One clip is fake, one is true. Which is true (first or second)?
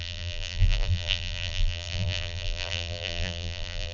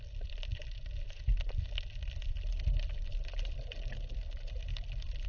second